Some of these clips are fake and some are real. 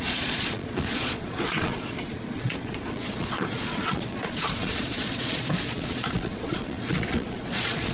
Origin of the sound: fake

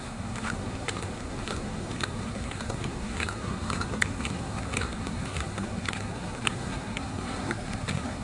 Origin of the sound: fake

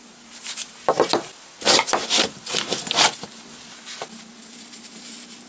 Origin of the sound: real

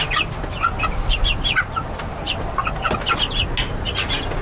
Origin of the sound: real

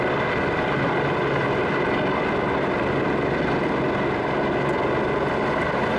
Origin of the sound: real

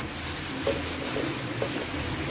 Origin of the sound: real